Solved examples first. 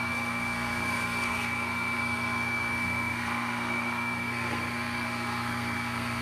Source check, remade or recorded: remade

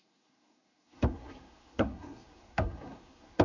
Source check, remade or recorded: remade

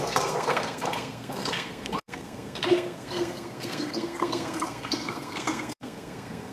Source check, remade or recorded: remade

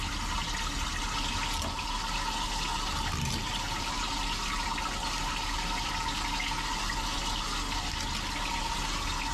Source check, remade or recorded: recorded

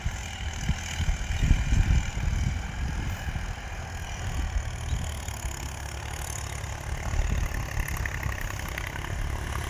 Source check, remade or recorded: recorded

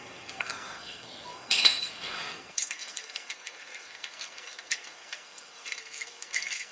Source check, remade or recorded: remade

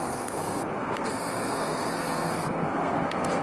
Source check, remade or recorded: remade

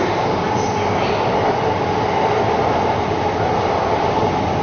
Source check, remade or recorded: recorded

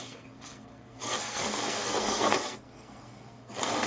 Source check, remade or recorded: remade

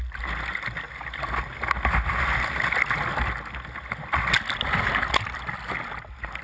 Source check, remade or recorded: recorded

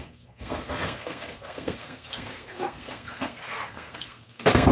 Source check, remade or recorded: remade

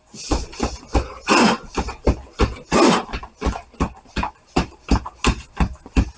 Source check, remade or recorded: recorded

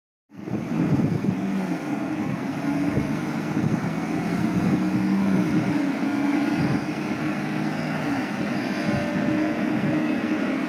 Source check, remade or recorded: remade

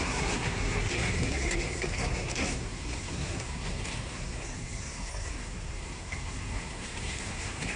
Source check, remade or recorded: remade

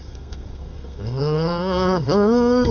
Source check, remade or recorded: remade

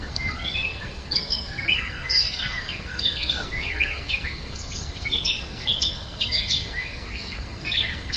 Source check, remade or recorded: remade